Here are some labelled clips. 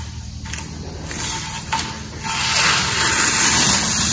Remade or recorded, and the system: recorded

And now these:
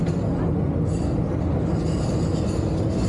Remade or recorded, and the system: recorded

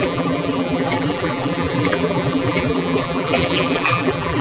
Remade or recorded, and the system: remade, vocoder, BigVGAN v2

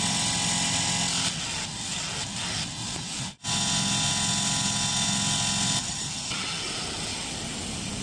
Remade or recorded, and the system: recorded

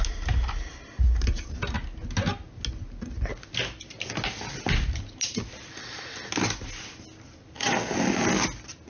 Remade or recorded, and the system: recorded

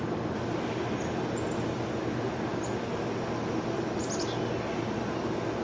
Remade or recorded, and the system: recorded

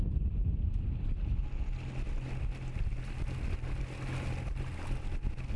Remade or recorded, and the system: recorded